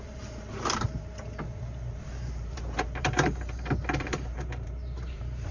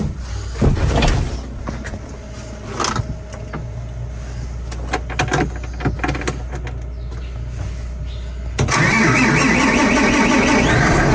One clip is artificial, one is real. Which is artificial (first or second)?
first